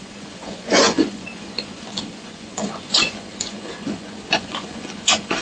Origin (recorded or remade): remade